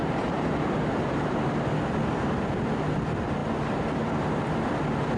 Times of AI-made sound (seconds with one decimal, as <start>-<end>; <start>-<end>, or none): 0.0-1.3